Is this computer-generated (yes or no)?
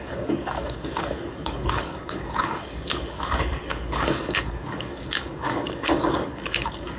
yes